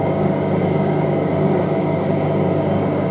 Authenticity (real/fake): fake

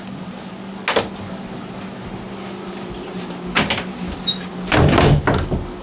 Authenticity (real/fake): real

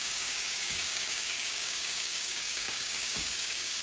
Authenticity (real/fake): fake